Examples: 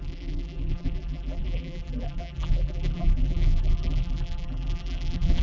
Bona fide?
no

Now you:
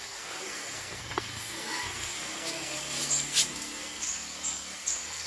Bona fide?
no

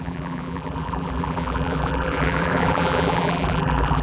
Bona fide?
no